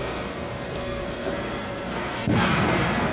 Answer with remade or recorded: remade